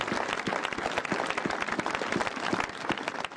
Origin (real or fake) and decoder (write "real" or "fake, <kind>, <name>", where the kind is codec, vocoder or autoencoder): real